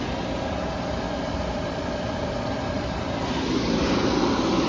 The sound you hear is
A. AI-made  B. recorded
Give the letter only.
B